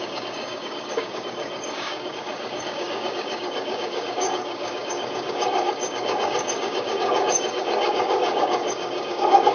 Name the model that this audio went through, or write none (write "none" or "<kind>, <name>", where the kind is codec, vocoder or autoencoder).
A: codec, DAC